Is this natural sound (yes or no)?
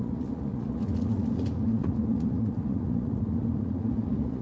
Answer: no